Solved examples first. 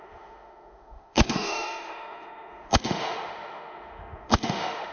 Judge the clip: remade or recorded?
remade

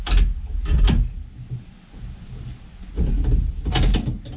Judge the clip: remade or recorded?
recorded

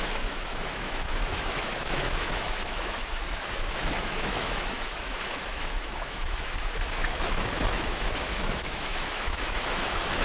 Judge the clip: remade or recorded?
remade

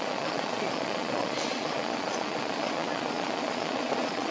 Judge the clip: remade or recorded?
remade